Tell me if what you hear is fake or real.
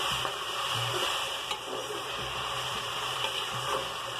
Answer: fake